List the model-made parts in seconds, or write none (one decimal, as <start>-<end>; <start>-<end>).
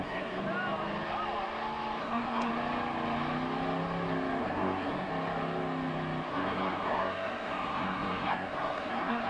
0.0-0.4; 2.0-2.5; 4.4-5.1; 6.3-9.3